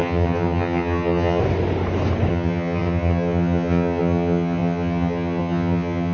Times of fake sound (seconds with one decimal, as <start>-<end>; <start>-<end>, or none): 0.0-1.4; 2.3-6.1